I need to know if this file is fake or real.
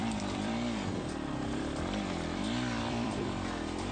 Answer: fake